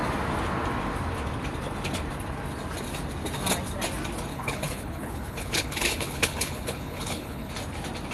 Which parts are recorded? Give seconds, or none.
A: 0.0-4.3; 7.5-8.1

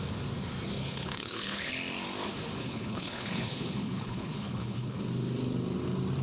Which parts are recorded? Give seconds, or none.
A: 0.0-0.8; 1.7-2.6; 5.0-6.2

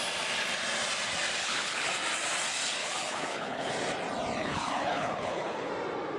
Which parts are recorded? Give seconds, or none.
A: 0.0-1.4; 1.9-2.8; 3.7-4.4; 5.7-6.2

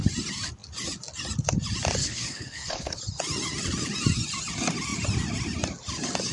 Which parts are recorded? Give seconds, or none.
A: 0.0-2.0; 3.0-6.3

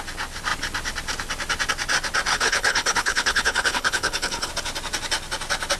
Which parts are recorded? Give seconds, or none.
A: 0.0-2.3; 4.5-5.8